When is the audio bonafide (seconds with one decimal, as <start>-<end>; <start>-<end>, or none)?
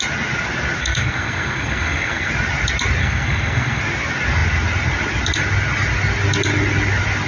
0.0-0.8; 2.3-3.0; 3.8-7.3